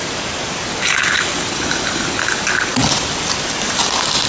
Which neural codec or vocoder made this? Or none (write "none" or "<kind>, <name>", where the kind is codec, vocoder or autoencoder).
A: none